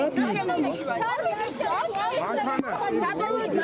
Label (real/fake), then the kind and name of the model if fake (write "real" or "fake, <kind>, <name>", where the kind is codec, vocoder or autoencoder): real